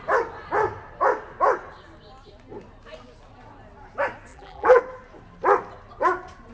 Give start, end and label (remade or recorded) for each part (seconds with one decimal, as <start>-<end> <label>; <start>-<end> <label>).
0.0-4.3 recorded; 4.3-4.8 remade; 4.8-6.5 recorded